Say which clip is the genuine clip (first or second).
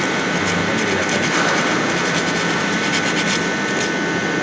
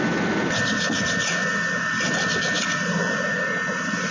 first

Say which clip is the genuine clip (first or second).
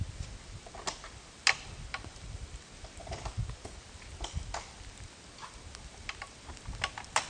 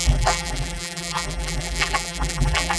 first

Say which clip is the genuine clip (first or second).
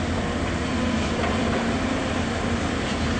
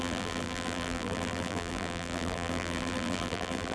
first